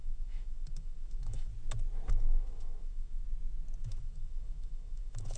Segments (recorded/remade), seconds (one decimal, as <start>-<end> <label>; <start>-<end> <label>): 0.0-1.5 remade; 1.5-2.1 recorded; 2.1-3.2 remade; 3.2-3.8 recorded; 3.8-5.4 remade